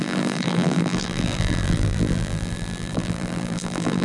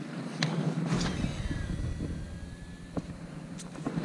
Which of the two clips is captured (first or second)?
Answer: second